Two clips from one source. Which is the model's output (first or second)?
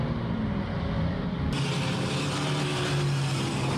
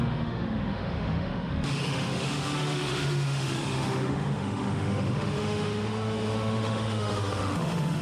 second